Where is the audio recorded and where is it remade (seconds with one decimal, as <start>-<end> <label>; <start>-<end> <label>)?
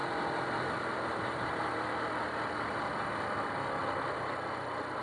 0.0-5.0 recorded